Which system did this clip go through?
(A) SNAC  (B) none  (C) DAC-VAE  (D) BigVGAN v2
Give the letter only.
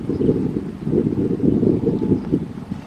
B